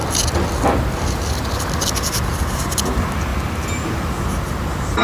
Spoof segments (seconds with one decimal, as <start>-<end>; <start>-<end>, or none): none